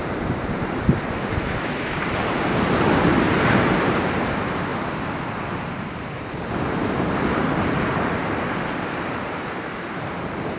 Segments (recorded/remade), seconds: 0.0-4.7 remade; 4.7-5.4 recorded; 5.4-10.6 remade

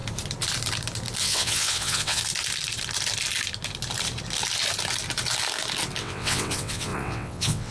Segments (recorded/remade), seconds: 0.0-1.2 recorded; 1.2-2.2 remade; 2.2-6.0 recorded; 6.0-7.7 remade

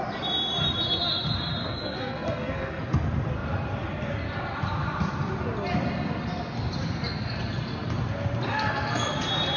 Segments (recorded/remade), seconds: 0.0-1.6 recorded; 1.6-2.8 remade; 2.8-8.5 recorded; 8.5-9.1 remade; 9.1-9.6 recorded

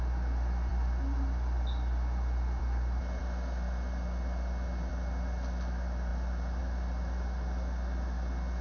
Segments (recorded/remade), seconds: 0.0-8.6 recorded